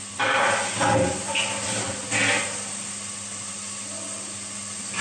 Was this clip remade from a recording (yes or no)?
no